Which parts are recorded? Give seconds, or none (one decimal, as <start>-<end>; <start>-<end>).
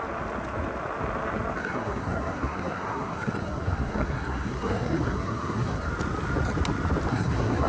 0.0-1.6; 5.9-7.1